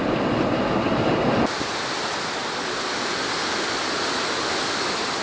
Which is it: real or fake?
real